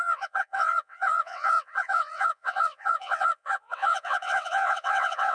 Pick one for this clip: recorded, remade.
remade